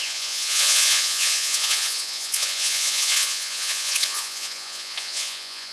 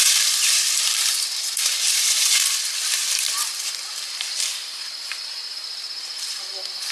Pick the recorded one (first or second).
second